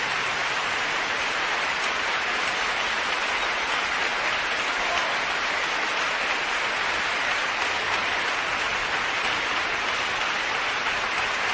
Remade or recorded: remade